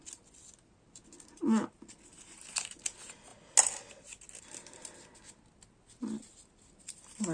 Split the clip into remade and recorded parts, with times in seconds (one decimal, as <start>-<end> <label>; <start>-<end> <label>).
0.0-7.3 recorded